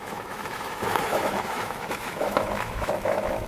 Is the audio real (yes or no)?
no